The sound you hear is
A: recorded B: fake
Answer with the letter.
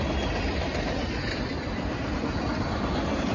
A